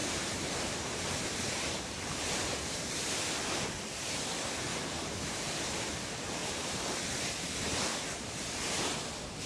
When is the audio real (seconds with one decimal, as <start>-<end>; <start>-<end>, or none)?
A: 3.4-4.7; 5.9-6.4; 7.0-7.9; 8.6-9.5